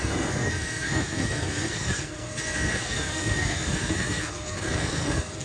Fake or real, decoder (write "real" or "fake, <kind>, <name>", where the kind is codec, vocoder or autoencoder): fake, codec, SNAC